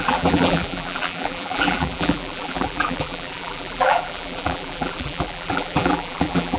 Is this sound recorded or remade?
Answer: remade